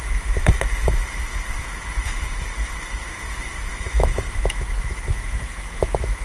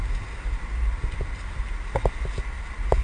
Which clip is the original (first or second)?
second